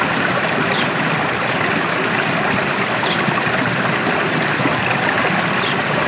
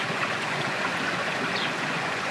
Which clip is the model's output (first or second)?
second